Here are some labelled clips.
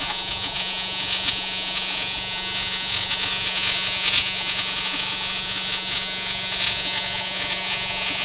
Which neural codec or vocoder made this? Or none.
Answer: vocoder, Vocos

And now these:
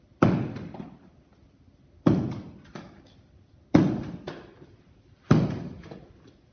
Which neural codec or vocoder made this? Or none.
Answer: none